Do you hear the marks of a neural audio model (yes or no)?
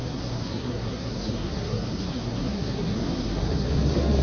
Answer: yes